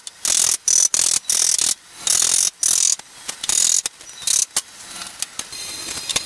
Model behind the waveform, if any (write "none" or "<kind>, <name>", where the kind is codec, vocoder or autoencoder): none